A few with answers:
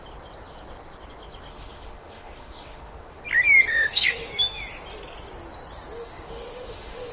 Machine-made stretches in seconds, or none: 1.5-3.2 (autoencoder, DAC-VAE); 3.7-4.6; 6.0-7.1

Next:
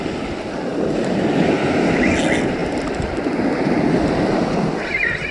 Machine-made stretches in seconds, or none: 2.6-4.1 (vocoder, BigVGAN v2)

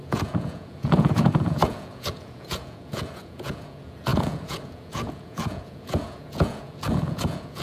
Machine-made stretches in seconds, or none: 0.0-7.6 (vocoder, Vocos)

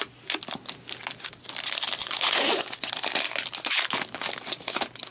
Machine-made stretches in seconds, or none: 2.0-2.9 (vocoder, Vocos)

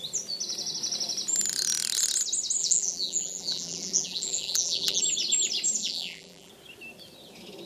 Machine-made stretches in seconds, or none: 2.6-5.0 (vocoder, BigVGAN v2); 5.8-6.5